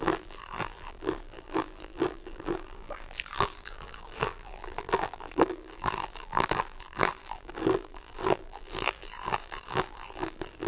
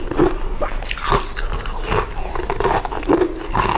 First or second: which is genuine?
second